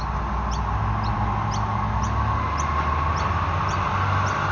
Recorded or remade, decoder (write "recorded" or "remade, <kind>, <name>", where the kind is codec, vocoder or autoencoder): recorded